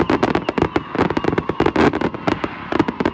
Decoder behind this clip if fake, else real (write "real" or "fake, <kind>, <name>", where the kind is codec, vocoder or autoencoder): real